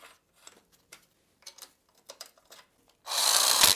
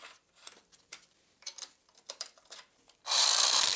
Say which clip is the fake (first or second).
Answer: second